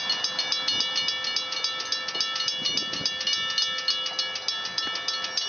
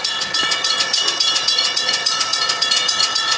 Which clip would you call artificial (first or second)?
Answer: second